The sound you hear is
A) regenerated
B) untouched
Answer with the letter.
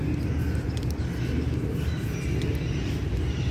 B